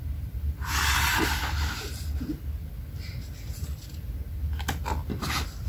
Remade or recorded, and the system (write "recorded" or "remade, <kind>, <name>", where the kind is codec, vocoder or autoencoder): recorded